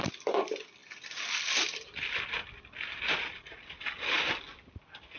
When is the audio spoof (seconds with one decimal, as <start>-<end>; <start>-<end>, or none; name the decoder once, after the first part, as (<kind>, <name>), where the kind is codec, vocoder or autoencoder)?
none